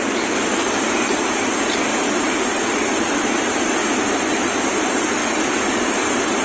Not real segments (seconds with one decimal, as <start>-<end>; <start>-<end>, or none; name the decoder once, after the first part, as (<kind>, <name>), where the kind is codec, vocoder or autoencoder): 1.9-3.0 (vocoder, BigVGAN v2); 5.2-5.8